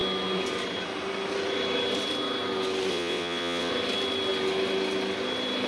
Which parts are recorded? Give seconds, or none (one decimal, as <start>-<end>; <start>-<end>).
0.0-2.9; 3.7-5.7